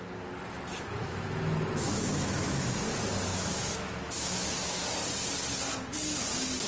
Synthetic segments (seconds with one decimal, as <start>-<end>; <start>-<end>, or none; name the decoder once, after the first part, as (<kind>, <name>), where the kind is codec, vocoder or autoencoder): 0.9-2.7 (autoencoder, DAC-VAE); 3.3-4.8